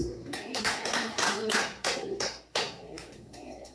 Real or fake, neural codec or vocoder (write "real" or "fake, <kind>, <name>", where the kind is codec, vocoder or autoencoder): fake, codec, SNAC